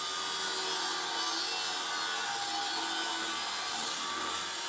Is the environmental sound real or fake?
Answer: real